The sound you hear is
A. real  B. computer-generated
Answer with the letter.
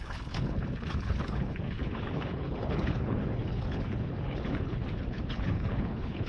B